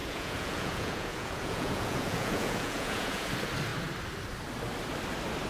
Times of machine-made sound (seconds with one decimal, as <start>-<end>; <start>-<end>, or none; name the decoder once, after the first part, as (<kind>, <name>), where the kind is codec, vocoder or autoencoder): 0.0-3.3 (vocoder, Vocos)